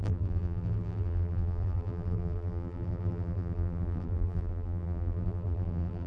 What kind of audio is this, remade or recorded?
remade